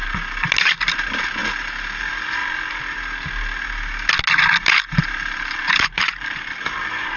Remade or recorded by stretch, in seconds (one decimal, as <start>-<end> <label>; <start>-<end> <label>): 0.0-0.6 recorded; 0.6-1.4 remade; 1.4-2.0 recorded; 2.0-2.4 remade; 2.4-5.0 recorded; 5.0-7.2 remade